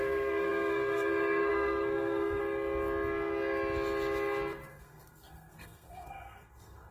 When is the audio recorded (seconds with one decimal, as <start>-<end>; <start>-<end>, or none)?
2.4-4.7